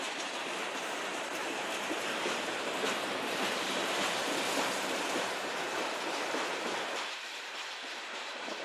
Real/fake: fake